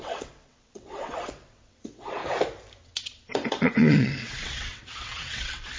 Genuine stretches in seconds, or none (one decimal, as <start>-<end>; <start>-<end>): 2.2-2.8